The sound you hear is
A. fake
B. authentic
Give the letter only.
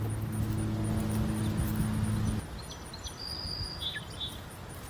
B